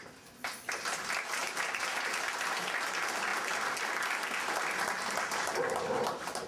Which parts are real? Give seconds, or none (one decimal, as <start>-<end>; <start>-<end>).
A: 0.0-6.5